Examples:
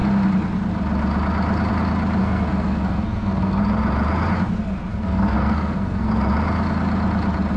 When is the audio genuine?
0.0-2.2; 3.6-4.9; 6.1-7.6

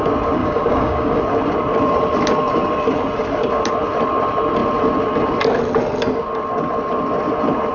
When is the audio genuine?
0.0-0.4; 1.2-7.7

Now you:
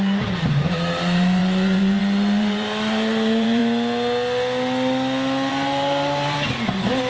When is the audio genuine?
3.6-5.5

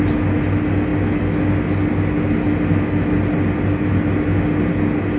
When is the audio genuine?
0.0-5.2

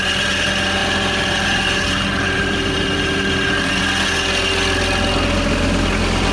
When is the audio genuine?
0.0-0.8; 3.8-6.3

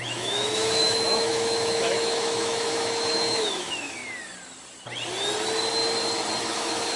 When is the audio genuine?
4.0-6.4

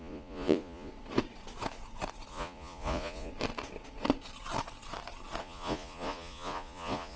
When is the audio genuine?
0.9-2.3; 3.3-5.4

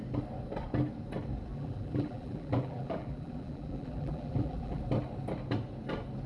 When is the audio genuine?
0.0-1.5; 4.8-6.3